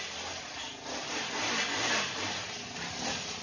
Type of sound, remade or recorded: recorded